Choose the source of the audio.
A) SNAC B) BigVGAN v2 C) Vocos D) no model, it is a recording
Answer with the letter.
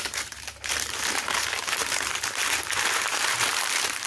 B